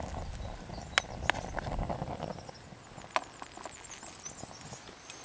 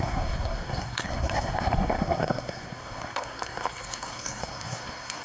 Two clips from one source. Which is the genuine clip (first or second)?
first